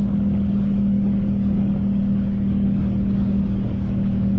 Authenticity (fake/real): fake